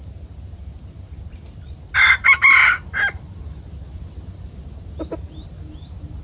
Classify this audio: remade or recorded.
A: recorded